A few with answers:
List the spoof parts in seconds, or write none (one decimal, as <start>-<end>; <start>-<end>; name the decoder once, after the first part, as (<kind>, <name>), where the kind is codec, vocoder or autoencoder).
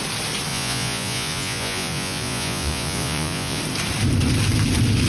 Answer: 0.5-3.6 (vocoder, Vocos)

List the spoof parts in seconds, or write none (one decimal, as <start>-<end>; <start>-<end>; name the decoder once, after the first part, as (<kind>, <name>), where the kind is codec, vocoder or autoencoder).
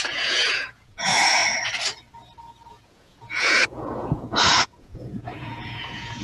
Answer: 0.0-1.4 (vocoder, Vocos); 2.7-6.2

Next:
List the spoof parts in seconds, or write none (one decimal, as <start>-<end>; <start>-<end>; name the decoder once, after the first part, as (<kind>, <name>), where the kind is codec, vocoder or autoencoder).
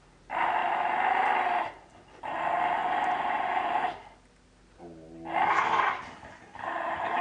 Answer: 2.8-3.5 (vocoder, Vocos)